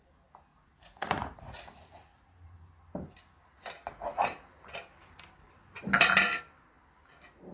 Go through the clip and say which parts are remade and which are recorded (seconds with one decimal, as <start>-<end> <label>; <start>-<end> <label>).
0.0-0.5 recorded; 0.5-2.7 remade; 2.7-7.5 recorded